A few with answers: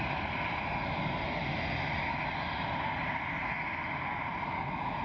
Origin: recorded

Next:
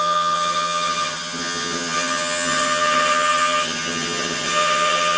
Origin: remade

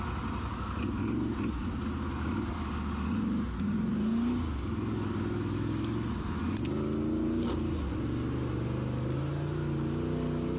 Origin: recorded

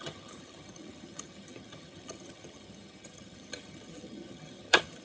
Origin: remade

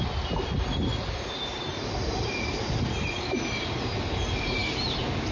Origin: recorded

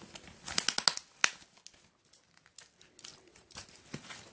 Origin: recorded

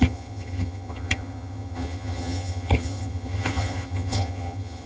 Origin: remade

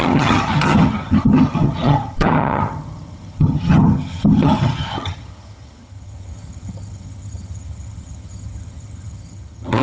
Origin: remade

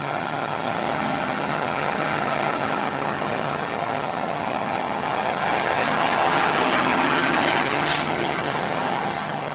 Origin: remade